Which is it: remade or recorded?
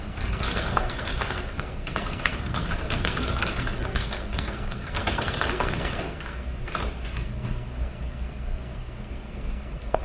remade